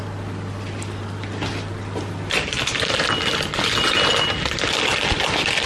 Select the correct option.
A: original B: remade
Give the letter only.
A